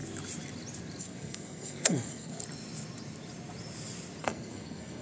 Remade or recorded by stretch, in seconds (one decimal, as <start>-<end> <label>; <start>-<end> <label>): 0.0-1.0 recorded; 1.0-2.4 remade; 2.4-4.2 recorded; 4.2-5.0 remade